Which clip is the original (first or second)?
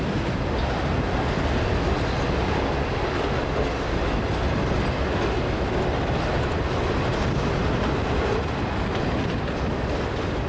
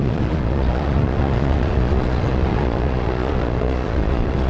first